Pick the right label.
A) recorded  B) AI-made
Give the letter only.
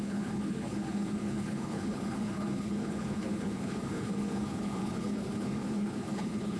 B